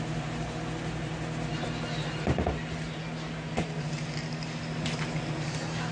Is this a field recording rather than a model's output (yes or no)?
yes